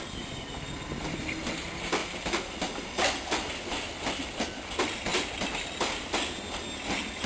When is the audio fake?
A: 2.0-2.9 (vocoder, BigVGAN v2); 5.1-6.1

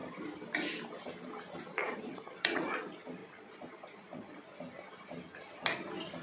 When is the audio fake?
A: 1.8-2.8 (vocoder, Vocos); 3.2-4.4